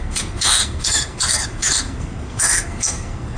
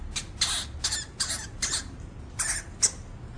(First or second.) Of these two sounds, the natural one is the second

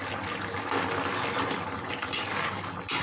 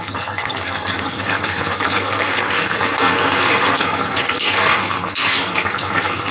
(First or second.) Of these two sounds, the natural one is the first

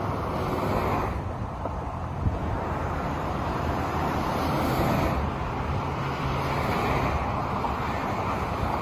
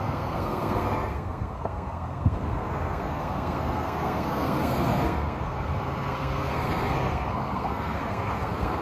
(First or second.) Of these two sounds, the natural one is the first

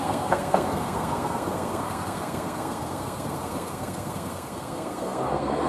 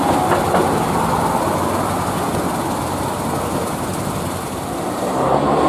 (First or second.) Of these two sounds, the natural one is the second